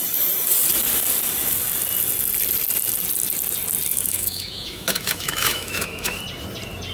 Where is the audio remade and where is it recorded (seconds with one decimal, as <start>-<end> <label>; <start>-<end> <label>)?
0.0-3.9 recorded; 3.9-6.2 remade; 6.2-6.9 recorded